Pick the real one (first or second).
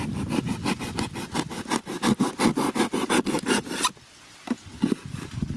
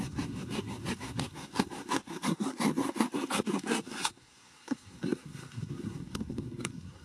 first